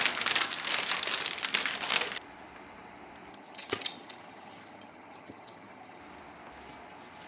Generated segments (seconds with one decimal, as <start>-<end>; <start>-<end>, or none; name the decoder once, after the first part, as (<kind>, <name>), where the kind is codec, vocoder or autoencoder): 3.3-6.0 (vocoder, HiFi-GAN)